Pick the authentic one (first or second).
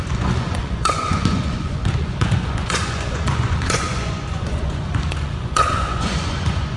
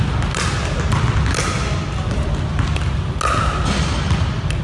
second